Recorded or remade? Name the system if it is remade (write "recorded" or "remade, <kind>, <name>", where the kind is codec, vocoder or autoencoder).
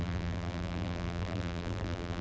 remade, vocoder, BigVGAN v2